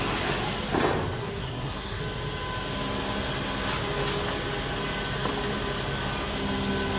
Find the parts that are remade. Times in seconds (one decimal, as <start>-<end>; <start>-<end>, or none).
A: 1.2-2.0